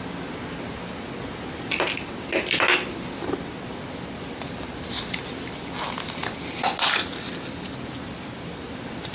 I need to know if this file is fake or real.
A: real